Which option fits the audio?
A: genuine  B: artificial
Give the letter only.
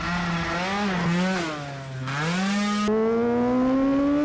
A